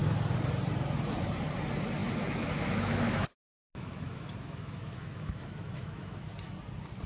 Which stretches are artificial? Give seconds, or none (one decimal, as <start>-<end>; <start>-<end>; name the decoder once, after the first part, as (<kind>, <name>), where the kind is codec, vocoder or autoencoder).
2.0-6.3 (autoencoder, DAC-VAE)